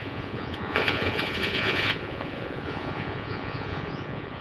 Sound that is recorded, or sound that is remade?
remade